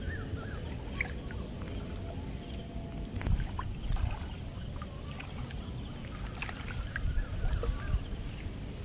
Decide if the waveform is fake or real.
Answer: real